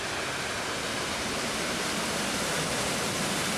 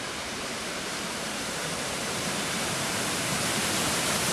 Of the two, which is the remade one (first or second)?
second